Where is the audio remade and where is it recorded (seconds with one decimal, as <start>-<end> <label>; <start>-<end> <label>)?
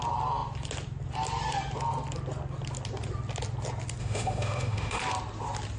0.0-4.0 recorded; 4.0-5.0 remade; 5.0-5.8 recorded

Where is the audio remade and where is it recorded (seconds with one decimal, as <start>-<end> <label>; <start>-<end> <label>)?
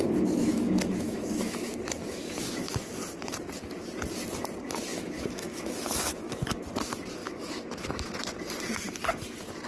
0.0-0.4 recorded; 0.4-3.0 remade; 3.0-4.9 recorded; 4.9-6.6 remade; 6.6-7.2 recorded; 7.2-8.1 remade; 8.1-9.7 recorded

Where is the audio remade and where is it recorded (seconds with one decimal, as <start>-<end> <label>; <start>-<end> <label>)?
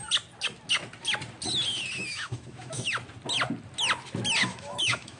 0.0-2.1 recorded; 2.1-2.8 remade; 2.8-4.4 recorded; 4.4-5.2 remade